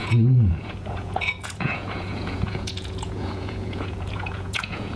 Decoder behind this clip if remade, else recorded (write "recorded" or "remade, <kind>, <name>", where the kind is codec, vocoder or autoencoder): remade, vocoder, Vocos